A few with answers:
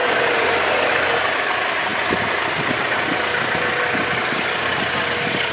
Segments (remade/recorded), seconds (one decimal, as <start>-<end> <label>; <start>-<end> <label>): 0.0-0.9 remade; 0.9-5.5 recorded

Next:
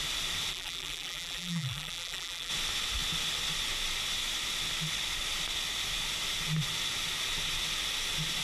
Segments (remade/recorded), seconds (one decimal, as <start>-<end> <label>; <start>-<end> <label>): 0.0-0.5 recorded; 0.5-2.5 remade; 2.5-8.4 recorded

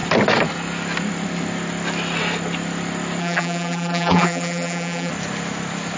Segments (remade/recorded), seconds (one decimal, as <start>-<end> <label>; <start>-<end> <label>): 0.0-3.2 recorded; 3.2-5.1 remade; 5.1-6.0 recorded

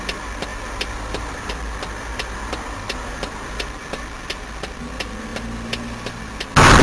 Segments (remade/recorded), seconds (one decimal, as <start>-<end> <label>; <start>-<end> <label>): 0.0-0.5 recorded; 0.5-1.5 remade; 1.5-5.3 recorded; 5.3-6.2 remade; 6.2-6.8 recorded

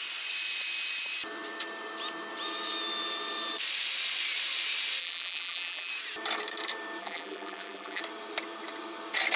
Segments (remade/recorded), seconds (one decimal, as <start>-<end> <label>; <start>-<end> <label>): 0.0-5.0 recorded; 5.0-5.9 remade; 5.9-7.0 recorded; 7.0-8.0 remade; 8.0-9.4 recorded

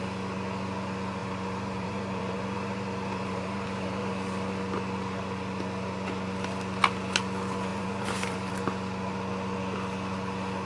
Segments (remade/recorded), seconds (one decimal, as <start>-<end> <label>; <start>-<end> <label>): 0.0-1.2 recorded; 1.2-4.1 remade; 4.1-7.7 recorded; 7.7-8.5 remade; 8.5-10.7 recorded